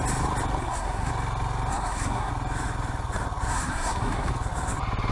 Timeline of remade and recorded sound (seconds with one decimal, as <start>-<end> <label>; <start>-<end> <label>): 0.0-0.6 recorded; 0.6-1.1 remade; 1.1-1.7 recorded; 1.7-2.3 remade; 2.3-3.5 recorded; 3.5-4.3 remade; 4.3-5.1 recorded